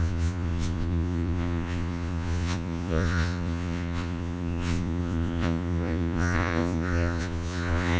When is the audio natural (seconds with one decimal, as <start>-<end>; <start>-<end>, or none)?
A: none